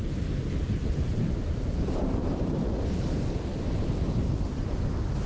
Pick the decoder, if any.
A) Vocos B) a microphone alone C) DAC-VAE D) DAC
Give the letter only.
B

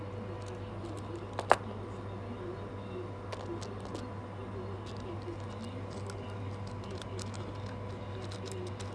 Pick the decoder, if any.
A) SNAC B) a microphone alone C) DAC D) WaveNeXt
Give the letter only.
B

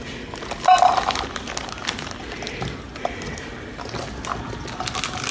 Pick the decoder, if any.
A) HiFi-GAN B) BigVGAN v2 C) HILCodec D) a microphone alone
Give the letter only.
D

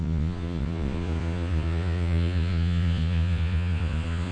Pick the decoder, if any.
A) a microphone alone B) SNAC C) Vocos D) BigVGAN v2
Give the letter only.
C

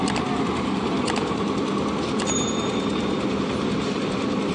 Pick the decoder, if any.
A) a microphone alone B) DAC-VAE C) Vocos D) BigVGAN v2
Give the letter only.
D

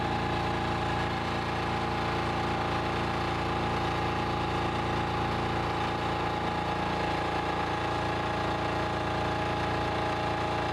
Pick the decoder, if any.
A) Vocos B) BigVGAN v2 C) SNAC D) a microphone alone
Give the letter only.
D